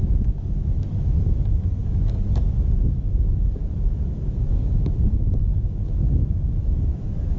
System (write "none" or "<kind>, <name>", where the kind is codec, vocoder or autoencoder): autoencoder, DAC-VAE